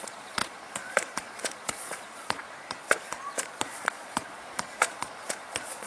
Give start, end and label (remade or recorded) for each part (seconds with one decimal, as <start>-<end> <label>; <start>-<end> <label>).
0.0-5.9 remade